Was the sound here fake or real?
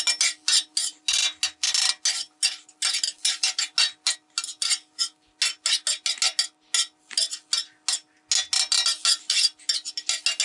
real